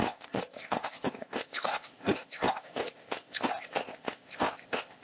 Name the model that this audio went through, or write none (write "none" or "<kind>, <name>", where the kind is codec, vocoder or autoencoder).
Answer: codec, ZipCodec